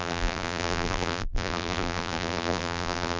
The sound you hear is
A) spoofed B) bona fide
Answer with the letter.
A